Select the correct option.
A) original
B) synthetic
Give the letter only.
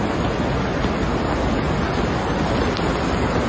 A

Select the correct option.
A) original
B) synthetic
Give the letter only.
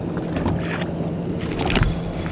A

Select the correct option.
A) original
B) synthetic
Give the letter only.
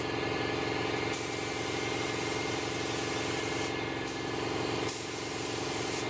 A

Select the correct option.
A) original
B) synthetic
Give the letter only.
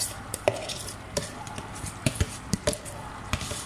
B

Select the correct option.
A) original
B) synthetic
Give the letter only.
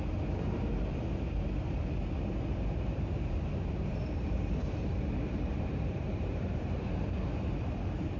B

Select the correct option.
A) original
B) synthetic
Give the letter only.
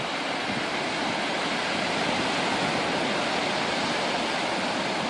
A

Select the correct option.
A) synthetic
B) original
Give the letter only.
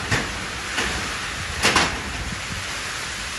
B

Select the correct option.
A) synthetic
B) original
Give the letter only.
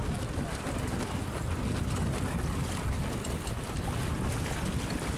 B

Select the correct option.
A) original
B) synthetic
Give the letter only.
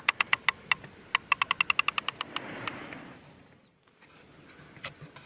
A